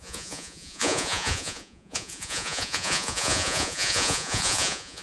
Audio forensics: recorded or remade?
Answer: remade